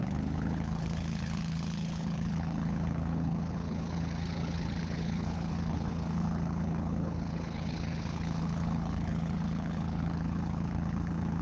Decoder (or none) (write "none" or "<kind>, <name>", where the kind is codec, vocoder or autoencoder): codec, HILCodec